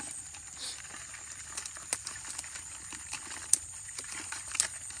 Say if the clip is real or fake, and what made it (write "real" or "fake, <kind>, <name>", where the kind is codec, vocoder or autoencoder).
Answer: real